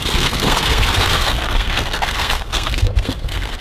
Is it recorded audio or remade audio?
remade